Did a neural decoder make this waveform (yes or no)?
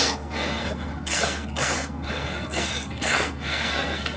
yes